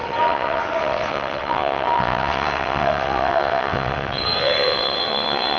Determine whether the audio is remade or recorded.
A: remade